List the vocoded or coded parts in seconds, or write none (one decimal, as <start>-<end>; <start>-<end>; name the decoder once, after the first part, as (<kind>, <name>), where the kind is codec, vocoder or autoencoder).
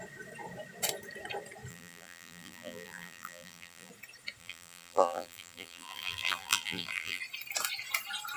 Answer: 1.7-3.9 (vocoder, BigVGAN v2); 4.4-7.2